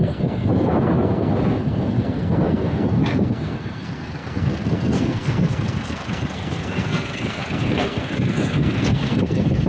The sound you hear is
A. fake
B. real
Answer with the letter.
A